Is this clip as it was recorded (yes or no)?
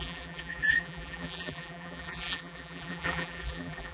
no